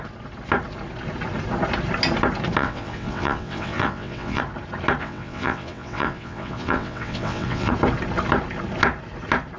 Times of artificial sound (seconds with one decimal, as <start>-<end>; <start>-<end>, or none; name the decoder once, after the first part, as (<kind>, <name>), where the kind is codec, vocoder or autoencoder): 2.6-4.4 (vocoder, WaveNeXt); 5.0-7.7